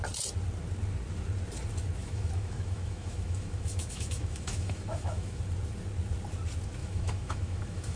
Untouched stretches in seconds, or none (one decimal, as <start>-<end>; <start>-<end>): 0.0-2.0; 5.4-6.8